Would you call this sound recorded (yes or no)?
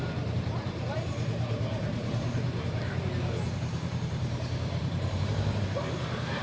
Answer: no